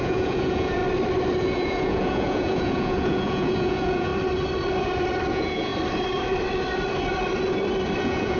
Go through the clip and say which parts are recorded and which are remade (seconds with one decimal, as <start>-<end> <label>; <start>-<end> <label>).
0.0-0.8 remade; 0.8-1.4 recorded; 1.4-4.1 remade; 4.1-5.3 recorded; 5.3-5.7 remade; 5.7-8.0 recorded; 8.0-8.4 remade